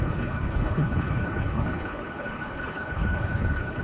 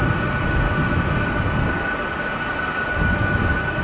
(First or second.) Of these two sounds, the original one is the second